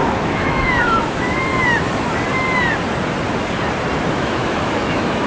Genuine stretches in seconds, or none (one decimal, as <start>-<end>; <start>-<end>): 1.5-4.1